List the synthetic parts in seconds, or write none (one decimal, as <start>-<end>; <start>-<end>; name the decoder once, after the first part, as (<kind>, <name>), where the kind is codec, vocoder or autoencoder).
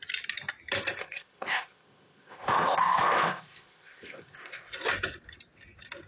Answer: 1.0-4.7 (codec, ZipCodec)